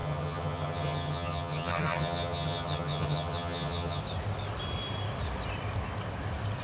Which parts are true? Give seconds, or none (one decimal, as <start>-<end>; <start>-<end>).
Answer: 4.0-6.6